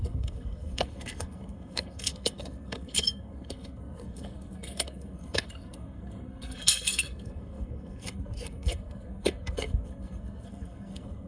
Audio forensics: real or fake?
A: fake